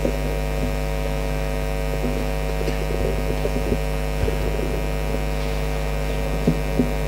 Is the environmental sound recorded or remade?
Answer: recorded